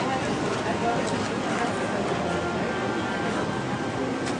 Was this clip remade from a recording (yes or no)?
no